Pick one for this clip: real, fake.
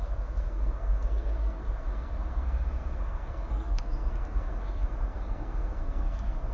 fake